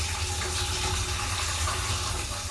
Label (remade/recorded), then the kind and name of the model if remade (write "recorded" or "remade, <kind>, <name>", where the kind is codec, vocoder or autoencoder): recorded